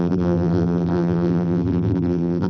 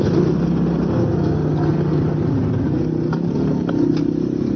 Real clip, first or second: second